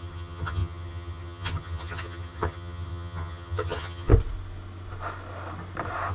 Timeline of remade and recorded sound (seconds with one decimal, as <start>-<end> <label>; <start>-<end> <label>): 0.0-4.1 remade; 4.1-6.1 recorded